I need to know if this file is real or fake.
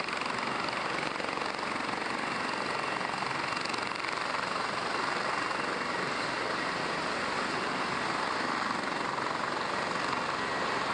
fake